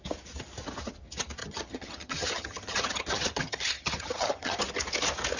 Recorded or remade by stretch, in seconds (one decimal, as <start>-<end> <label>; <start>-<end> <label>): 0.0-1.4 recorded; 1.4-4.6 remade; 4.6-5.4 recorded